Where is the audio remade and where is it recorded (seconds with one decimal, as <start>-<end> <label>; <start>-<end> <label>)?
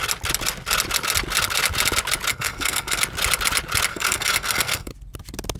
0.0-2.3 recorded; 2.3-3.0 remade; 3.0-3.9 recorded; 3.9-4.9 remade; 4.9-5.6 recorded